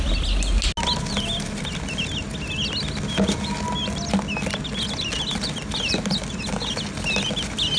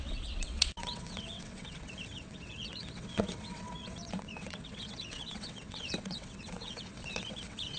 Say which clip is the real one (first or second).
first